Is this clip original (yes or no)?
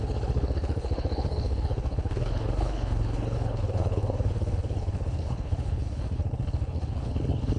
no